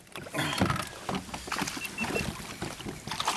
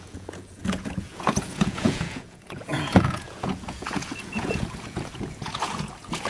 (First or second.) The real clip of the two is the first